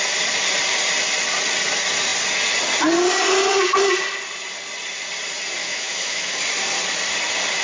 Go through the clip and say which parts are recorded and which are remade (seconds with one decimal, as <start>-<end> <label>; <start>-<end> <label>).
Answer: 0.0-5.6 recorded; 5.6-6.4 remade; 6.4-7.6 recorded